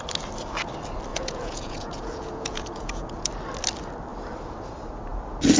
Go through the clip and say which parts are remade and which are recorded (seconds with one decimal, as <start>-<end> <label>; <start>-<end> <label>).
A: 0.0-1.1 recorded; 1.1-3.3 remade; 3.3-5.6 recorded